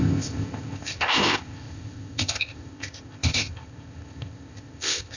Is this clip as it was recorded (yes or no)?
no